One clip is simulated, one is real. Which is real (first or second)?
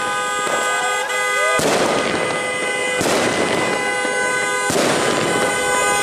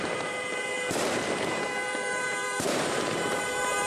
first